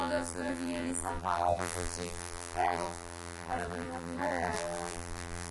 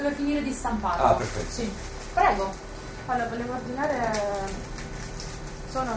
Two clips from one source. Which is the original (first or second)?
second